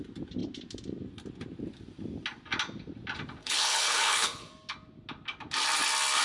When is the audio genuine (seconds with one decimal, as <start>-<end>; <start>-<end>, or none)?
0.0-3.4; 4.5-6.2